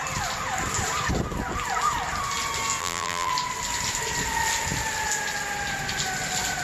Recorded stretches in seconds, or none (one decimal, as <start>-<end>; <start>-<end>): 0.0-2.8; 3.3-6.6